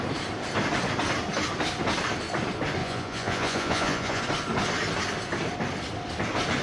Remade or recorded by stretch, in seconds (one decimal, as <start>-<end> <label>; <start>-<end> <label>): 0.0-2.8 recorded; 2.8-4.2 remade; 4.2-6.6 recorded